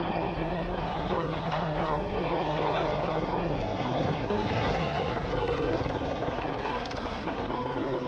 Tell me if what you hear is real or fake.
fake